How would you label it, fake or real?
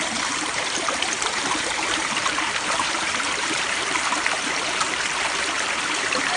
fake